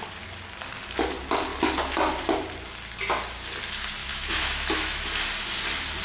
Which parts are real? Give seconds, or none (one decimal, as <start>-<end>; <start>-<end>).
0.0-4.0; 5.0-6.0